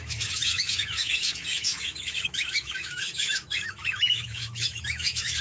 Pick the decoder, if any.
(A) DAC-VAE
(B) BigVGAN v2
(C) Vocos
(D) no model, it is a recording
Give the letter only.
A